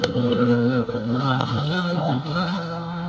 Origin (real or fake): fake